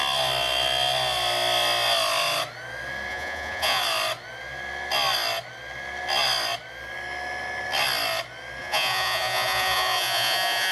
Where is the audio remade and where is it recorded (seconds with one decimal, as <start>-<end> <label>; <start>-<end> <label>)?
0.0-3.1 recorded; 3.1-3.8 remade; 3.8-8.6 recorded; 8.6-10.7 remade